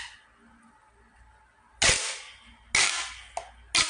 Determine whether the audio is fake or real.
real